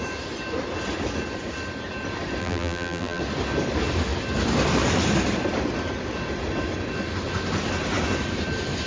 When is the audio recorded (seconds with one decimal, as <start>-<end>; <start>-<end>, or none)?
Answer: 0.0-2.4; 3.2-8.9